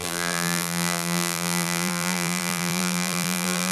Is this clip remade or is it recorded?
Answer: remade